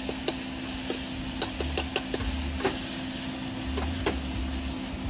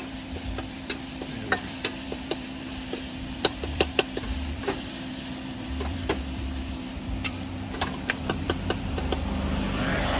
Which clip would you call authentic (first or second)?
first